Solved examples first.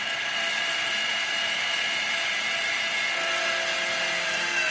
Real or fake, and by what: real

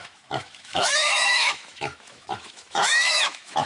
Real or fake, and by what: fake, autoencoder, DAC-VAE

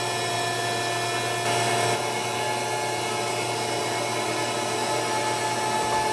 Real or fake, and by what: real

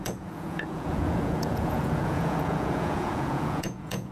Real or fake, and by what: fake, vocoder, Vocos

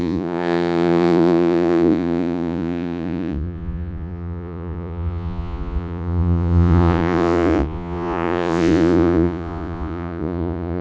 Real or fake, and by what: fake, vocoder, Vocos